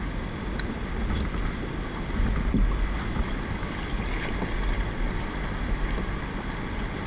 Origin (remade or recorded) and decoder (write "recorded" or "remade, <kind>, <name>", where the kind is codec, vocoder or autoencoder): recorded